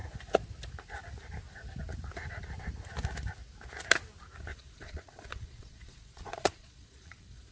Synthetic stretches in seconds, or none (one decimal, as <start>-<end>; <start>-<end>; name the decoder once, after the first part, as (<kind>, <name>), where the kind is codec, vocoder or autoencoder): 4.5-7.5 (vocoder, Vocos)